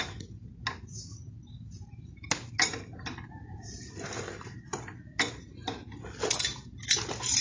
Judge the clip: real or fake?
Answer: real